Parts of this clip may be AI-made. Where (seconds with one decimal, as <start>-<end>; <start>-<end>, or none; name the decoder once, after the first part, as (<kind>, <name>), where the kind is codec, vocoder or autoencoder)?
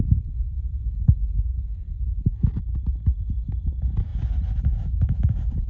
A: 0.0-0.8 (vocoder, BigVGAN v2); 1.4-4.1; 4.6-5.7